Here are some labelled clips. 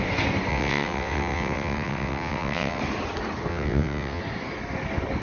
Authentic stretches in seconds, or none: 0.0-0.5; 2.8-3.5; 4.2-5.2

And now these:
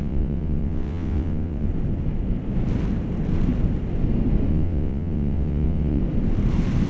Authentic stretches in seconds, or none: 1.7-4.5; 6.0-6.9

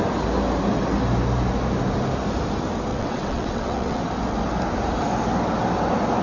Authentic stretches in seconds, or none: 0.0-2.9; 4.0-6.2

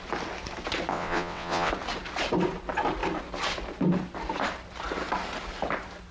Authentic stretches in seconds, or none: 0.0-0.9; 1.7-6.1

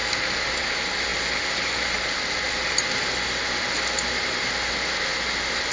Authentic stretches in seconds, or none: 0.0-5.7

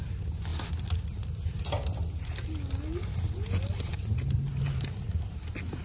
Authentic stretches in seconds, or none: 0.0-5.8